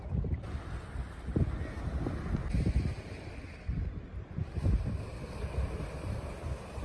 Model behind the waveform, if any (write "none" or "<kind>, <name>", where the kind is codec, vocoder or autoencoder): none